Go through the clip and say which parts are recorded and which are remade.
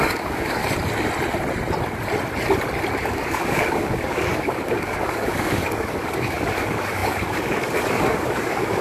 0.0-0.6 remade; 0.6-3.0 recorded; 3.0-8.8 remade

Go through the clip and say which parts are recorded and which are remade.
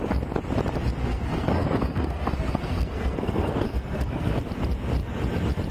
0.0-1.0 recorded; 1.0-4.4 remade; 4.4-5.7 recorded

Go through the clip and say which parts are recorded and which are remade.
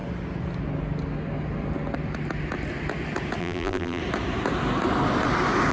0.0-3.4 recorded; 3.4-4.0 remade; 4.0-5.7 recorded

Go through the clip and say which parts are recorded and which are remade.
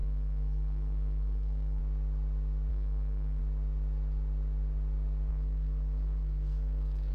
0.0-1.8 remade; 1.8-2.7 recorded; 2.7-3.4 remade; 3.4-5.3 recorded; 5.3-7.1 remade